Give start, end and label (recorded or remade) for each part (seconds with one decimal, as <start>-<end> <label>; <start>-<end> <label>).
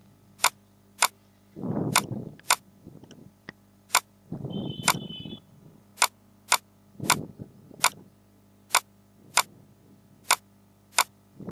0.0-5.9 remade; 5.9-11.1 recorded; 11.1-11.5 remade